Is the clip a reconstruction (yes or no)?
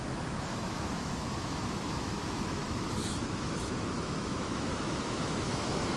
yes